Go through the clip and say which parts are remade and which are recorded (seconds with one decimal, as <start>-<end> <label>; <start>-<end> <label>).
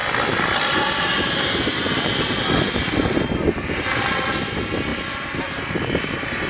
0.0-4.9 recorded; 4.9-6.5 remade